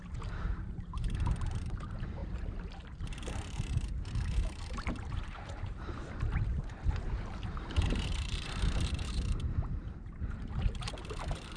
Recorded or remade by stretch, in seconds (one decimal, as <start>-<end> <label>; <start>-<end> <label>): 0.0-11.6 remade